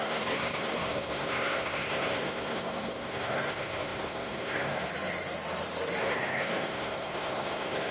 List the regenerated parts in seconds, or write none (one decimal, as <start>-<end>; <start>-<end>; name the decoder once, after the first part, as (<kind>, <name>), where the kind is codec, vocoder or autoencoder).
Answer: 0.0-4.9 (codec, SNAC); 6.0-7.9